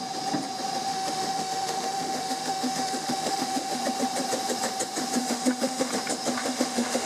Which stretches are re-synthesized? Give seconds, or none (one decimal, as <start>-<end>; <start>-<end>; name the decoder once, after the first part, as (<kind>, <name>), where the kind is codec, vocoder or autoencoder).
0.9-3.8 (autoencoder, DAC-VAE); 5.2-5.9; 6.4-7.1